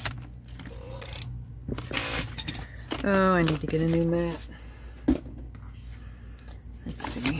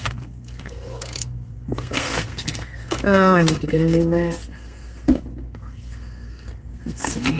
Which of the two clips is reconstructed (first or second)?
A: second